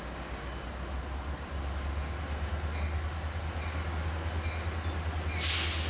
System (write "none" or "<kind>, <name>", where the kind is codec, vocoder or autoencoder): none